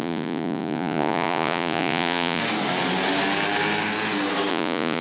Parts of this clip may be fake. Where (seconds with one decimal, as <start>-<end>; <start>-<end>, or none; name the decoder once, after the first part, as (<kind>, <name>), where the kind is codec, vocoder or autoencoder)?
0.0-2.4 (vocoder, Vocos); 4.5-5.0